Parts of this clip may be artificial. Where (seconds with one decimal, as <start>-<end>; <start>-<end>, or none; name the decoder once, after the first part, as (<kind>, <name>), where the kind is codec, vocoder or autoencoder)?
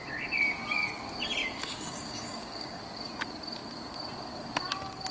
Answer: 1.4-2.8 (codec, DAC)